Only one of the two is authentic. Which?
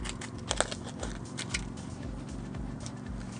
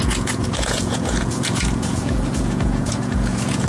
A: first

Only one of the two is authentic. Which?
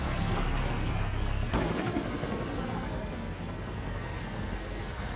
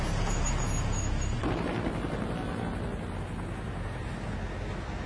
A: second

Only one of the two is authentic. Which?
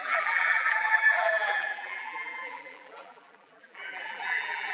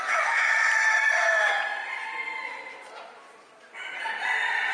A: second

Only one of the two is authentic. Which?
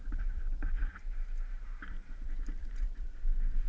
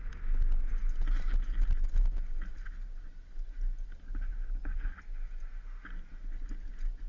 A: second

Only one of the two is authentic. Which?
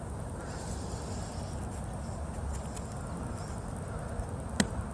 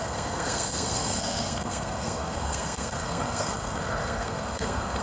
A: first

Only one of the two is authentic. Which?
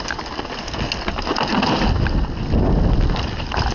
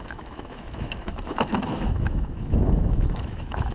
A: first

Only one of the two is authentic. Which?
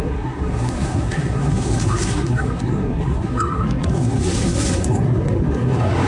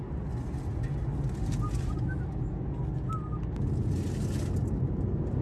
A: second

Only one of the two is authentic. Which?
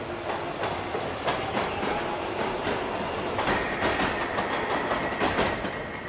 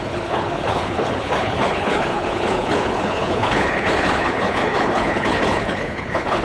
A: first